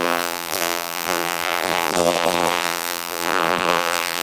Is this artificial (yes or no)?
yes